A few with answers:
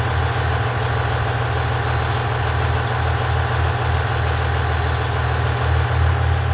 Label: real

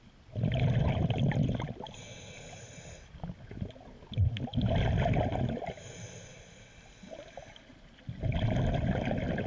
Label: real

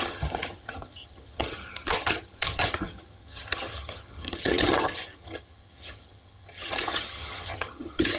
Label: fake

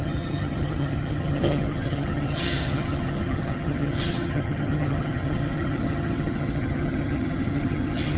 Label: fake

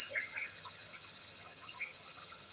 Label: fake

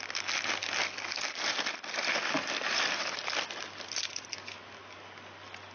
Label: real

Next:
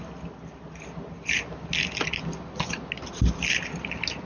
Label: real